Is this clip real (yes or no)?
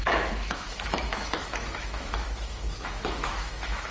no